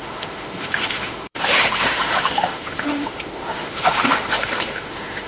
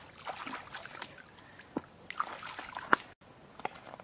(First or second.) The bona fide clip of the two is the second